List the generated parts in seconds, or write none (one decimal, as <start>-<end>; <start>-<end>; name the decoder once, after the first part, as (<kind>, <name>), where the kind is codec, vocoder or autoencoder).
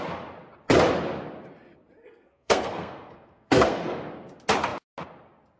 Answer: 2.0-4.0 (codec, SNAC)